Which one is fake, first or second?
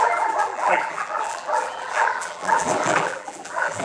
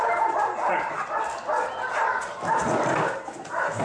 first